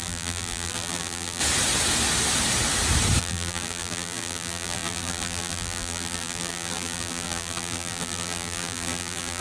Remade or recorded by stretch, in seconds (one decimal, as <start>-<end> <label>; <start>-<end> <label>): 0.0-1.4 remade; 1.4-3.2 recorded; 3.2-9.4 remade